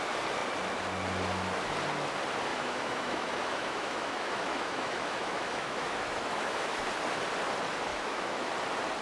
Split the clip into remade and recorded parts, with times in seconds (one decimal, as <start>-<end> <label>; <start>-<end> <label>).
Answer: 0.0-2.5 recorded; 2.5-6.8 remade; 6.8-7.9 recorded; 7.9-8.5 remade; 8.5-9.0 recorded